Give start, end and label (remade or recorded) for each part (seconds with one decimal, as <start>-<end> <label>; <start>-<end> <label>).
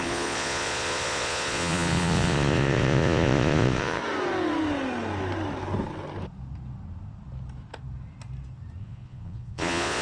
0.0-4.0 remade; 4.0-8.8 recorded; 8.8-10.0 remade